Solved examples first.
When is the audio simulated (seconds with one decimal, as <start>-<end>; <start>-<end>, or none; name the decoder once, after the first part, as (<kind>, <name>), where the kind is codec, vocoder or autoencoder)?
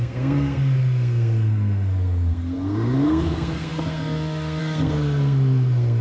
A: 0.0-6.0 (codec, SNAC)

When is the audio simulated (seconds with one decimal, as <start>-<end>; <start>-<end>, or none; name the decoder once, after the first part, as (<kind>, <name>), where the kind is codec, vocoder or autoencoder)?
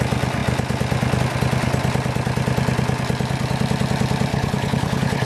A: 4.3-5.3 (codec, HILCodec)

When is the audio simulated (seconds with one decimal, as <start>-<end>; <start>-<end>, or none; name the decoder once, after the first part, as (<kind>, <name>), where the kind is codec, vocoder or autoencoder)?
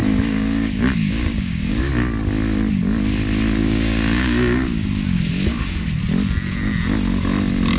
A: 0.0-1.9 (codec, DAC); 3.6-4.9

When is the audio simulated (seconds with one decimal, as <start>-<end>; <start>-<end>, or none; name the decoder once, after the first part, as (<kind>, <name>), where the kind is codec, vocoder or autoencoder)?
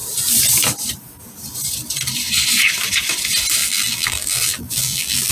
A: 3.6-5.3 (vocoder, BigVGAN v2)